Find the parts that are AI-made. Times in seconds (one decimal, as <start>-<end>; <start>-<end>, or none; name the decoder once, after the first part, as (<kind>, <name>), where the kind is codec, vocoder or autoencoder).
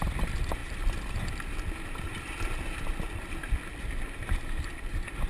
0.0-0.6 (vocoder, BigVGAN v2); 3.8-5.3